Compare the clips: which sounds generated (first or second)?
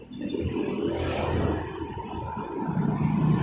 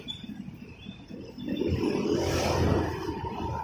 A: second